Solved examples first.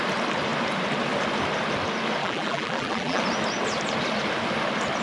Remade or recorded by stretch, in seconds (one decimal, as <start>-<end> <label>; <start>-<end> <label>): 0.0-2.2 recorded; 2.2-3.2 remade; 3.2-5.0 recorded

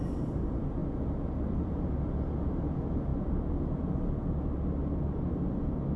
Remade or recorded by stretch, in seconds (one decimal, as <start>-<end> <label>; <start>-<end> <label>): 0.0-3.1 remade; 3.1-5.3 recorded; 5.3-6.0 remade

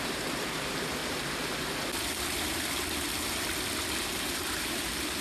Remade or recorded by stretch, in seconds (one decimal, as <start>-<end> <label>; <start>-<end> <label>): 0.0-1.0 remade; 1.0-4.1 recorded; 4.1-5.2 remade

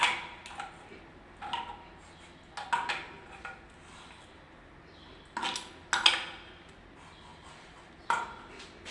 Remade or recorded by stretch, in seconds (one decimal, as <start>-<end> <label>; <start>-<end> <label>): 0.0-7.3 recorded; 7.3-7.9 remade; 7.9-8.9 recorded

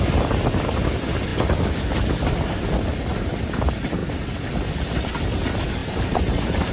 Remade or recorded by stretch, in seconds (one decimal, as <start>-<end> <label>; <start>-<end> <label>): 0.0-5.8 recorded; 5.8-6.7 remade

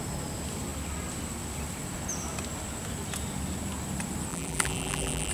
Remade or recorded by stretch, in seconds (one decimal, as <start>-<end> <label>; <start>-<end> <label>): 0.0-4.3 recorded; 4.3-5.3 remade

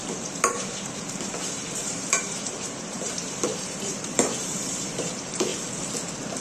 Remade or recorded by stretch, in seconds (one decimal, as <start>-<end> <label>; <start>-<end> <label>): 0.0-0.5 recorded; 0.5-5.5 remade; 5.5-6.4 recorded